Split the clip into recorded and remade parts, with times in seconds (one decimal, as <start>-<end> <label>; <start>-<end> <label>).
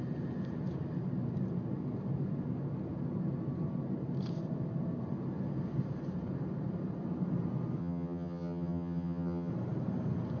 0.0-7.8 recorded; 7.8-9.5 remade; 9.5-10.4 recorded